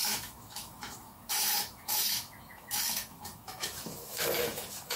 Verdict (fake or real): fake